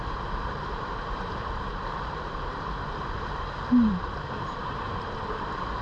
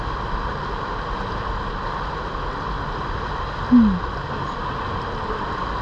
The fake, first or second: first